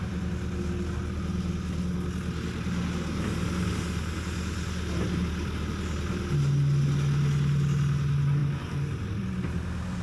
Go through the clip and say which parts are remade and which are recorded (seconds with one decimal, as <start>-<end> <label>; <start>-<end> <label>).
0.0-10.0 recorded